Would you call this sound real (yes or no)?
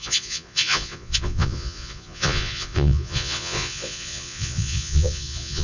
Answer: no